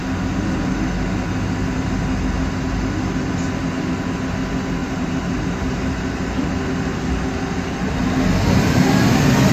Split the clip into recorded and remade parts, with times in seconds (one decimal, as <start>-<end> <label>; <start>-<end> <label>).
0.0-4.8 recorded; 4.8-6.5 remade; 6.5-9.5 recorded